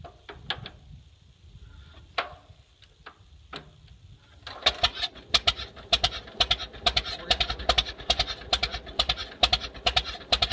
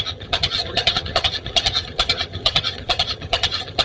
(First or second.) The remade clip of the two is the second